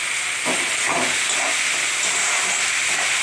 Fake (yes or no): no